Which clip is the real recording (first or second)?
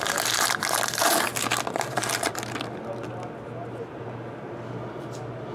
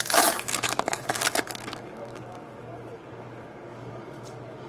first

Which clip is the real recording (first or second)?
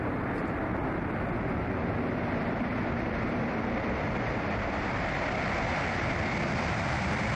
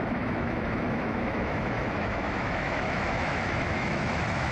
first